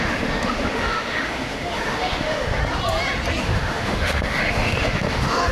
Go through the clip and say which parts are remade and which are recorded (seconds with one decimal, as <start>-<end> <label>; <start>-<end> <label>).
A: 0.0-2.6 remade; 2.6-3.4 recorded; 3.4-5.5 remade